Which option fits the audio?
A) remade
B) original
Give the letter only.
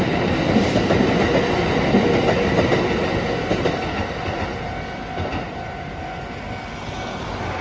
B